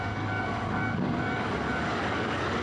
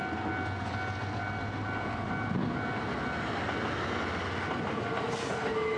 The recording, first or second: second